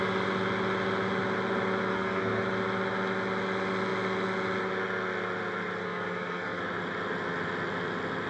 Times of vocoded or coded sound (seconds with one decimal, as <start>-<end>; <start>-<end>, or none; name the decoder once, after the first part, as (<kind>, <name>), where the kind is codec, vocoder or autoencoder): 1.9-2.4 (codec, SNAC); 5.8-6.6